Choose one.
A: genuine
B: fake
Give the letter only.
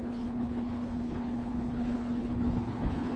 B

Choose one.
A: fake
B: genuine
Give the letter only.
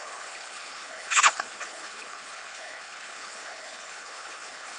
A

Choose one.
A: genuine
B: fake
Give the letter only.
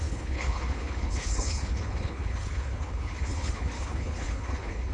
B